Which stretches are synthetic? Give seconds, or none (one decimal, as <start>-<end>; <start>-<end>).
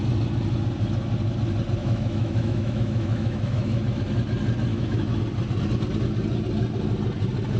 1.8-4.0; 4.7-5.2